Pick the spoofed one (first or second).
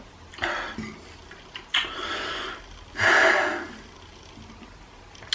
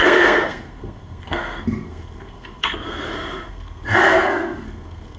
second